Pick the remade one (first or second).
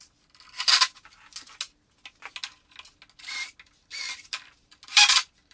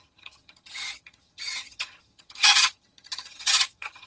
second